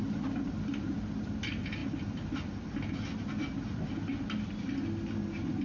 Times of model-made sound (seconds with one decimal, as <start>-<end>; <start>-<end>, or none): none